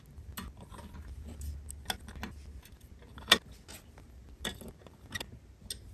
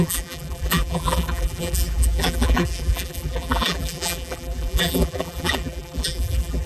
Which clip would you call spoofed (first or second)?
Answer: second